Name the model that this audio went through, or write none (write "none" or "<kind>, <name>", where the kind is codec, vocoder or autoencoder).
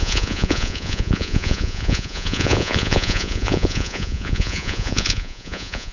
vocoder, Vocos